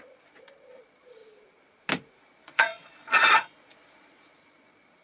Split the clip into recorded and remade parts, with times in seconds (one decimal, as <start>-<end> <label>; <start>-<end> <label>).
0.0-1.2 remade; 1.2-2.2 recorded; 2.2-5.0 remade